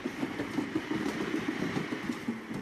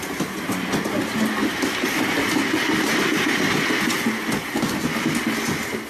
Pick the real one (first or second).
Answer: second